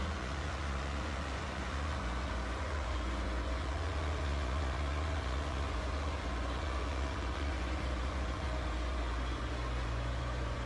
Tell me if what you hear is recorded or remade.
remade